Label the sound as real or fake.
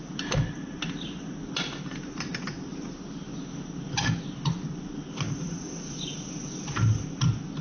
real